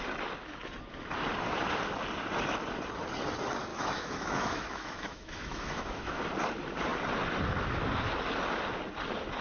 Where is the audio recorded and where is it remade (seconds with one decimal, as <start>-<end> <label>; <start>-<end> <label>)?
0.0-3.7 recorded; 3.7-6.2 remade; 6.2-9.4 recorded